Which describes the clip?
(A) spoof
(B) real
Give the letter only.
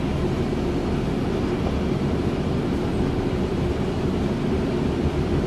B